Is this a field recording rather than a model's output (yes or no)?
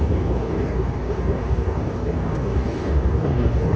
no